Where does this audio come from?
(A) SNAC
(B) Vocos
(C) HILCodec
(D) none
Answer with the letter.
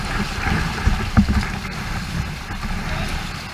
D